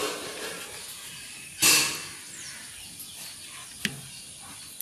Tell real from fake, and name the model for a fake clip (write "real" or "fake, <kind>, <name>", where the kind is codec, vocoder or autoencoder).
real